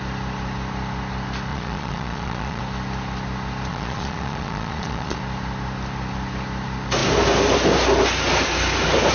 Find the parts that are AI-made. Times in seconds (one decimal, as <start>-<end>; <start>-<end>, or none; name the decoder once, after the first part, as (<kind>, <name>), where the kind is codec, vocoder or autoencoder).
1.5-2.6 (vocoder, Vocos); 3.7-5.2